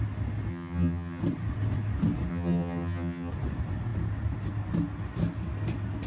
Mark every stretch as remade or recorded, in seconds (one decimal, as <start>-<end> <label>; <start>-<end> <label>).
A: 0.0-0.5 recorded; 0.5-1.2 remade; 1.2-2.3 recorded; 2.3-3.3 remade; 3.3-6.1 recorded